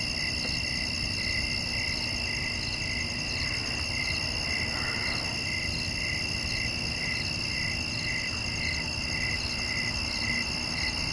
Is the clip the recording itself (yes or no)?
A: yes